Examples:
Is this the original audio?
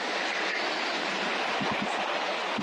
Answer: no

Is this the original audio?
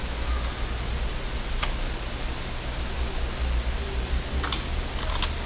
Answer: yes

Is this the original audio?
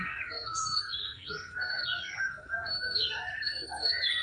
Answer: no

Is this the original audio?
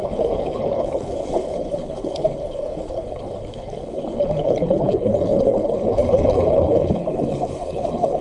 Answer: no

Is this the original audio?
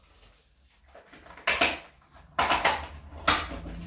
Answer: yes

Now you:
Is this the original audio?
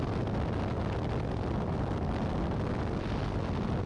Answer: yes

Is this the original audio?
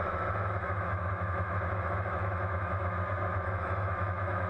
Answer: no